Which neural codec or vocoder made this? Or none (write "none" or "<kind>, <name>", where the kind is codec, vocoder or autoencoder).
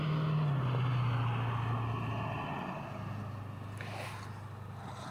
none